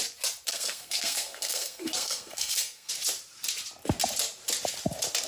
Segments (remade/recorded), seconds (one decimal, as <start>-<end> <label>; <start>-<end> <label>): 0.0-0.5 recorded; 0.5-2.9 remade; 2.9-5.3 recorded